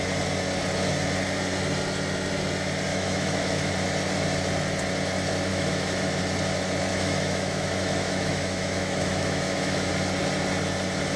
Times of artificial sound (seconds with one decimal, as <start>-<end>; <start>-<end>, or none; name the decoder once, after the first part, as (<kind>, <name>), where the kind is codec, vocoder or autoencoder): 2.9-3.7 (autoencoder, DAC-VAE); 5.5-6.2; 6.9-9.9